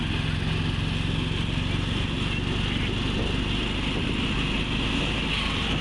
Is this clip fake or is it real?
real